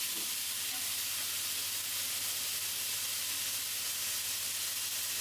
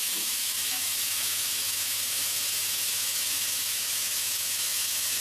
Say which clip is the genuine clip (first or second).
first